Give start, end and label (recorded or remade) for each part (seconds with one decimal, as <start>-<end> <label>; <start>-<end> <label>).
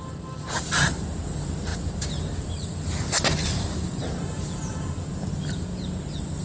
0.0-4.7 recorded; 4.7-5.3 remade; 5.3-6.4 recorded